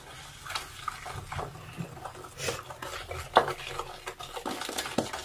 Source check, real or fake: real